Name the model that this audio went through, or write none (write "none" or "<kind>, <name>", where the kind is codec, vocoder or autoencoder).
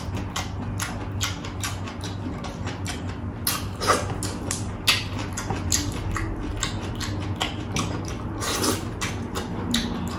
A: none